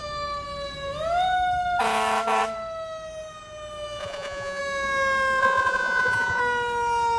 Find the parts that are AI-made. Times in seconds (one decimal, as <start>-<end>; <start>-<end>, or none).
4.0-4.6; 5.4-6.4